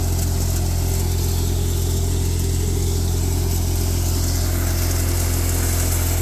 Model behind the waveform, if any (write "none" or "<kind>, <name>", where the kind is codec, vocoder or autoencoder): none